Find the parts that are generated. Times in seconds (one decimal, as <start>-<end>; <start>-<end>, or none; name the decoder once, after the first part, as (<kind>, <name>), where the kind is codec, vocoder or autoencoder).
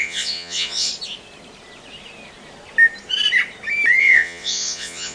0.0-0.9 (vocoder, Vocos); 4.0-5.1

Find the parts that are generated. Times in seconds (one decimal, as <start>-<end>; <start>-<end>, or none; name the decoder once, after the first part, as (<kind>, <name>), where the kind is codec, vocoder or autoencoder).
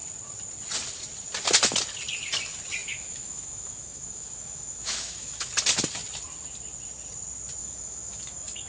2.8-5.5 (autoencoder, DAC-VAE); 7.6-8.7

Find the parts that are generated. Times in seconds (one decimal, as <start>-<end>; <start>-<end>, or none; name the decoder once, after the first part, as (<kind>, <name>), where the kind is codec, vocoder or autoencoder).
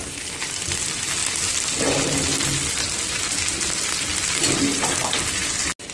none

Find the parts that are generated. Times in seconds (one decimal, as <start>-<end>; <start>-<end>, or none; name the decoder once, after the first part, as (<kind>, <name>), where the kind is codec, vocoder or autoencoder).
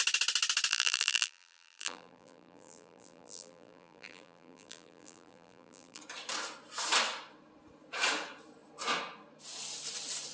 0.7-6.0 (vocoder, BigVGAN v2)